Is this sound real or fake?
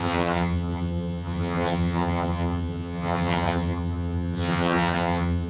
fake